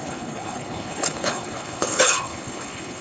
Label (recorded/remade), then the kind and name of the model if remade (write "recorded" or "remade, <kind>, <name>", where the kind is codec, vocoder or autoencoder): remade, codec, HILCodec